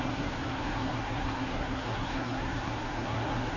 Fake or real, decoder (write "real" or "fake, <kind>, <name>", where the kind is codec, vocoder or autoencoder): fake, codec, SNAC